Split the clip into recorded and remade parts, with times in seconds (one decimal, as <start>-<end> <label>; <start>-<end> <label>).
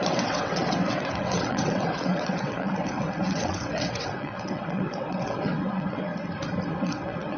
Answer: 0.0-6.1 remade; 6.1-6.7 recorded; 6.7-7.4 remade